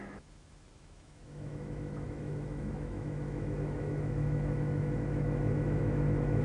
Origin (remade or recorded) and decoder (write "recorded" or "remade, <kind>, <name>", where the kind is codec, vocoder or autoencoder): remade, autoencoder, DAC-VAE